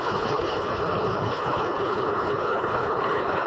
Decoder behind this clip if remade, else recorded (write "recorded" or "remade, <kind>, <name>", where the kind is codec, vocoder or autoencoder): remade, codec, HILCodec